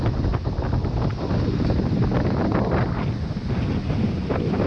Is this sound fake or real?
real